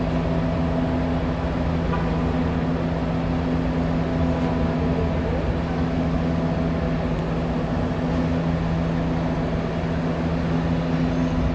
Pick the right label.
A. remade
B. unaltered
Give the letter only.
B